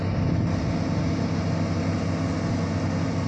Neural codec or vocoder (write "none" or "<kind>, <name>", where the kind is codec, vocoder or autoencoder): none